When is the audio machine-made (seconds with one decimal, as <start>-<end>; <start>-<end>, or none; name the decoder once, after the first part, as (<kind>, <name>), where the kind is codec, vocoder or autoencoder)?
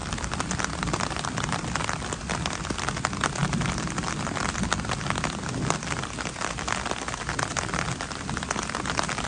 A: 0.0-2.6 (vocoder, BigVGAN v2); 7.5-8.2